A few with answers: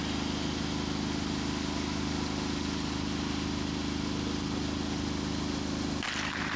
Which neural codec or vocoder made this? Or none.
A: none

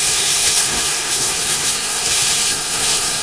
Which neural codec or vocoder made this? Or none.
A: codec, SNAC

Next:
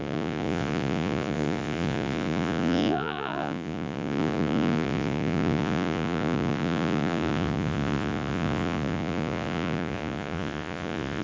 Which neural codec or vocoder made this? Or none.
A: vocoder, Vocos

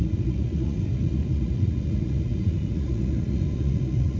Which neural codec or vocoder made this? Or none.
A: vocoder, Vocos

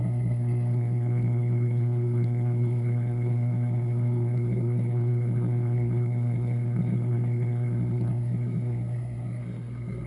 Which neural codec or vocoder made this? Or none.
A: codec, SNAC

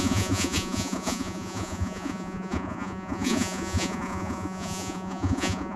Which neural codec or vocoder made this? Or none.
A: vocoder, Vocos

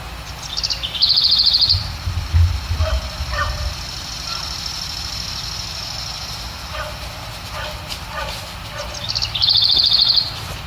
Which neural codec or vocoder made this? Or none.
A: none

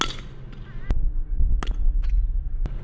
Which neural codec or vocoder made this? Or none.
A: none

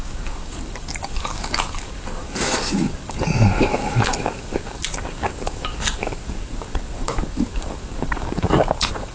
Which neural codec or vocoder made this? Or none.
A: codec, DAC